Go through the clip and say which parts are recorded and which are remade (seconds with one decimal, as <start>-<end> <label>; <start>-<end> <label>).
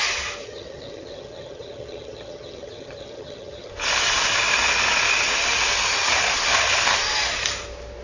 0.0-0.4 recorded; 0.4-3.7 remade; 3.7-8.0 recorded